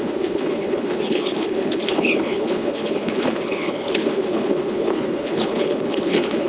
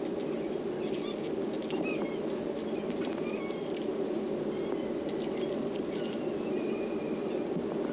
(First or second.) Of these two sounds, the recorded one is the second